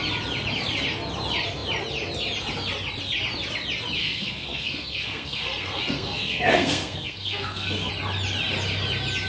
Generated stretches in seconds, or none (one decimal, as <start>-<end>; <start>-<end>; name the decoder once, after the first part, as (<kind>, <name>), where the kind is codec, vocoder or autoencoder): 4.0-7.9 (codec, SNAC)